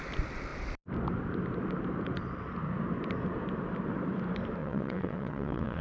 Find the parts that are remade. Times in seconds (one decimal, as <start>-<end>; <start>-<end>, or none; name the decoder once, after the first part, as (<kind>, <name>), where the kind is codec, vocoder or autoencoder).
4.6-5.8 (vocoder, WaveNeXt)